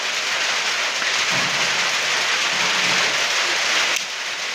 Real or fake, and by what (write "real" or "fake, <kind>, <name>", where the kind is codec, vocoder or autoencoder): real